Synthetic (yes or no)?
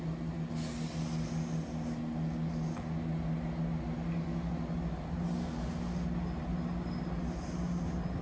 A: no